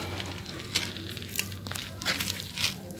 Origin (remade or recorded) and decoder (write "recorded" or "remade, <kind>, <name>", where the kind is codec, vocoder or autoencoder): recorded